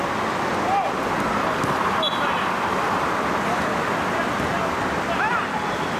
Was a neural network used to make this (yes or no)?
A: no